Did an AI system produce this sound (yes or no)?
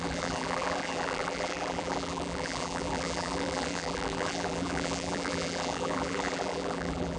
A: yes